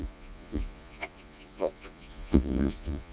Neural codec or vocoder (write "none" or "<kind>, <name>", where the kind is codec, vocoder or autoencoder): vocoder, Vocos